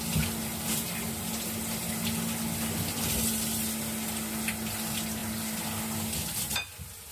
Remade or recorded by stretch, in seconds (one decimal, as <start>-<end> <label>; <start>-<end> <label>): 0.0-7.1 recorded